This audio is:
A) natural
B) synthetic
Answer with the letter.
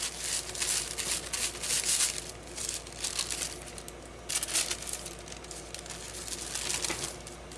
A